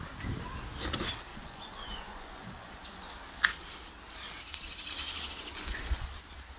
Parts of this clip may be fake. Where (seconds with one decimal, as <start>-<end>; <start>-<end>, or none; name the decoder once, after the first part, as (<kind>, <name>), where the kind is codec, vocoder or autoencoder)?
1.3-3.1 (vocoder, Vocos); 5.5-6.1